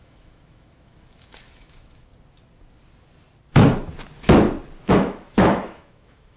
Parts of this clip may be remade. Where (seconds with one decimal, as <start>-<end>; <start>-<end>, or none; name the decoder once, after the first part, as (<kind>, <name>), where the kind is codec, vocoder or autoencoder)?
0.0-2.1 (autoencoder, DAC-VAE); 4.9-6.4

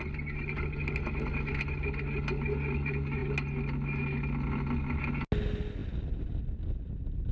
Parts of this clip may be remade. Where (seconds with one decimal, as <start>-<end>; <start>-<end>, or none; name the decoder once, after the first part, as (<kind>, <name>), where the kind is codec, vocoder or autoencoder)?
none